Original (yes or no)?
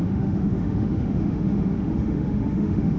no